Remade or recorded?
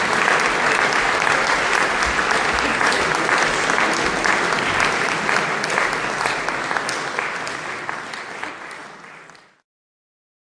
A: recorded